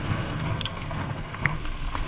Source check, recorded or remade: remade